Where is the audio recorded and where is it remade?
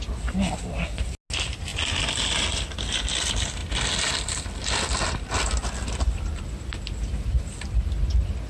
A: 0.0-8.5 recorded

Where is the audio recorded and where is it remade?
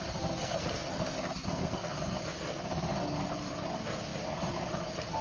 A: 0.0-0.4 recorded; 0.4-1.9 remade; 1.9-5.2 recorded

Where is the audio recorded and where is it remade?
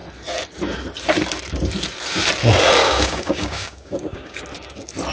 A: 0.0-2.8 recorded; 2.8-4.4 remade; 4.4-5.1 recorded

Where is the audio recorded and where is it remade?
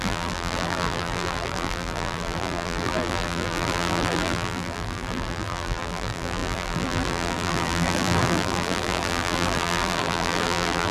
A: 0.0-10.9 remade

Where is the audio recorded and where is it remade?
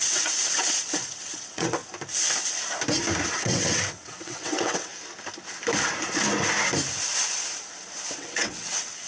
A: 0.0-1.8 remade; 1.8-3.3 recorded; 3.3-4.9 remade; 4.9-8.2 recorded; 8.2-9.1 remade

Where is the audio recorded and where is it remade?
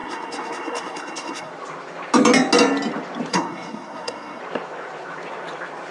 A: 0.0-1.5 remade; 1.5-3.3 recorded; 3.3-4.4 remade; 4.4-5.9 recorded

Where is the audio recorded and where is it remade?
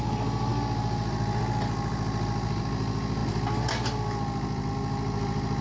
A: 0.0-5.6 recorded